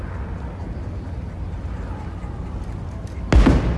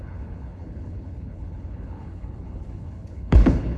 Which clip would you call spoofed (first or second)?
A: second